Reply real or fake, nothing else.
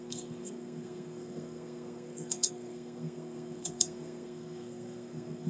fake